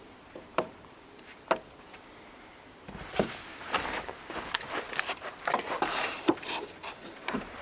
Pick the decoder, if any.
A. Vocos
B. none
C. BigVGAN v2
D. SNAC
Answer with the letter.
C